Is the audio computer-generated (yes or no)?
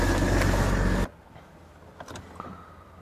no